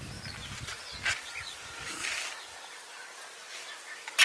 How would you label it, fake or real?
real